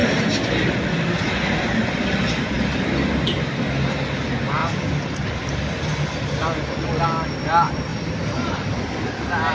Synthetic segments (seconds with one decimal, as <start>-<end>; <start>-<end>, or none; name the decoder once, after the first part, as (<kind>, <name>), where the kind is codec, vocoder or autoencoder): none